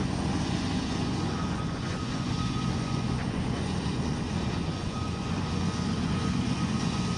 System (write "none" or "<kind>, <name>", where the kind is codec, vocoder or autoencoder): vocoder, Vocos